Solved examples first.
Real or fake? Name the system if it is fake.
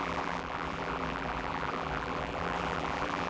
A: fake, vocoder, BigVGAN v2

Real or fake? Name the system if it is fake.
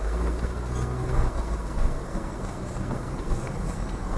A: fake, codec, SNAC